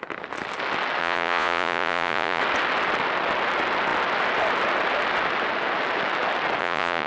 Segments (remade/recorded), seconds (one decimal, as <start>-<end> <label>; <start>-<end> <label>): 0.0-1.0 recorded; 1.0-2.4 remade; 2.4-6.6 recorded; 6.6-7.1 remade